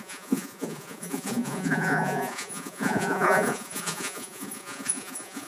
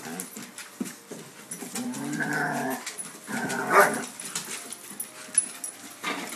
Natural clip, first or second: second